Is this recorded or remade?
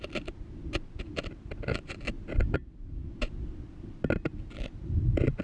recorded